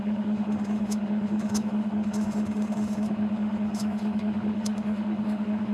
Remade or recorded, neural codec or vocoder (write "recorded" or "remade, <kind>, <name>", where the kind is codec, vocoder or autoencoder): remade, autoencoder, DAC-VAE